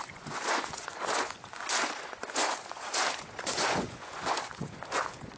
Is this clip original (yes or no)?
no